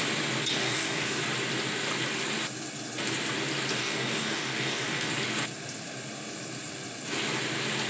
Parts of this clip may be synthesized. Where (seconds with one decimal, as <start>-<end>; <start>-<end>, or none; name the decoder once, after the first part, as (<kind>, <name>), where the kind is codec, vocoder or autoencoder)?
0.5-1.2 (codec, DAC); 3.7-5.1